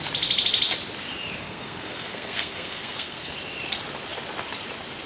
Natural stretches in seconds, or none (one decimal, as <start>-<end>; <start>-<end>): 0.0-1.4; 3.3-5.1